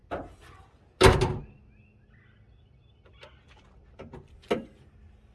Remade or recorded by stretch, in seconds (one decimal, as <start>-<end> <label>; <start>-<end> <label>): 0.0-5.3 recorded